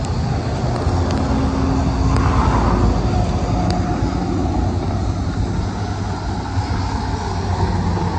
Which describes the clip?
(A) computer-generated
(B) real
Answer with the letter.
B